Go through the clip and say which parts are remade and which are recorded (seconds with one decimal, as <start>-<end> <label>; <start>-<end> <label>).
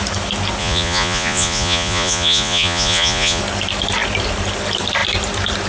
0.0-0.6 recorded; 0.6-3.4 remade; 3.4-5.7 recorded